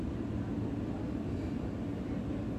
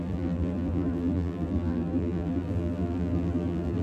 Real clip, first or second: first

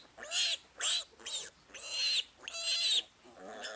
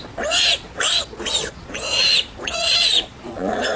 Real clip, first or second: first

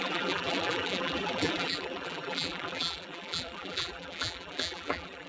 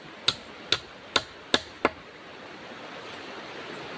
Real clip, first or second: second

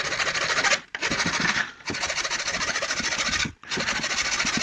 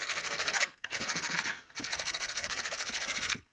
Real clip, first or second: first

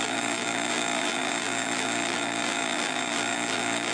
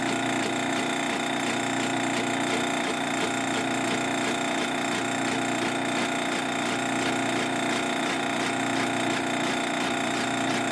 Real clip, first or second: second